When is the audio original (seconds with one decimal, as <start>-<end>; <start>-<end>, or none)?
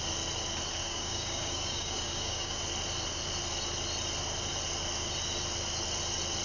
0.0-0.8; 2.6-6.4